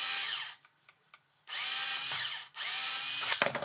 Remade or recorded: remade